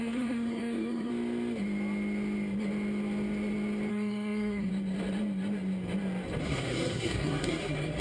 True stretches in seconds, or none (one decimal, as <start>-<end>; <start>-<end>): 1.1-3.9; 4.7-6.4